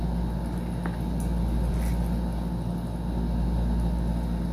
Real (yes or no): yes